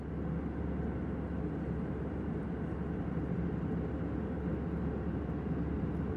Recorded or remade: recorded